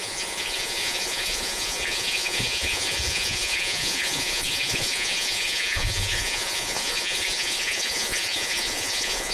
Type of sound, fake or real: fake